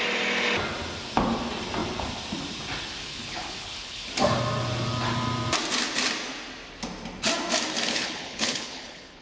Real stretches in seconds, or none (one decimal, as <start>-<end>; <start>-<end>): 0.0-3.0; 4.1-7.9